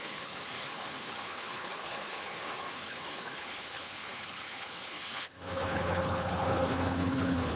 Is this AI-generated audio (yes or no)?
yes